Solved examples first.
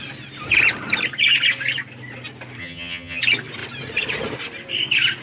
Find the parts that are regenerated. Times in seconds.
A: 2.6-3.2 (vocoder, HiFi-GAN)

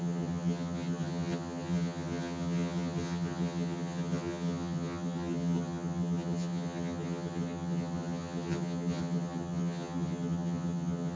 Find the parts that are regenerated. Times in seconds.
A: 0.0-11.2 (vocoder, HiFi-GAN)

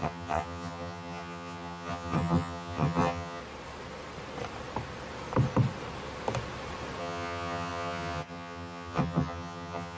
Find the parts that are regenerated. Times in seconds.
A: 0.0-3.4 (vocoder, HiFi-GAN); 7.0-10.0

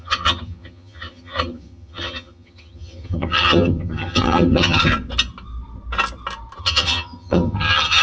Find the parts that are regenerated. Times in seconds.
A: 0.0-4.9 (vocoder, HiFi-GAN); 6.6-8.0

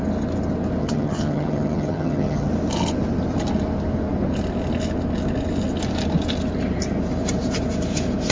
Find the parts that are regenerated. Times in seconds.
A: 0.8-2.5 (vocoder, HiFi-GAN)